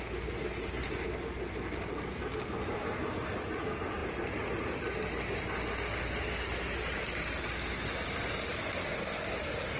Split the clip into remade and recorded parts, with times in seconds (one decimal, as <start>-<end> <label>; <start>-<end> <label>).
0.0-9.8 recorded